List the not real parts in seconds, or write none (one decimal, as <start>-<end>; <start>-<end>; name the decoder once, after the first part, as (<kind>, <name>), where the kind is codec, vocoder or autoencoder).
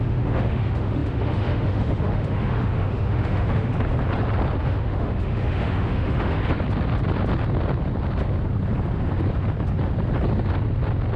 0.0-3.7 (autoencoder, DAC-VAE); 4.6-6.4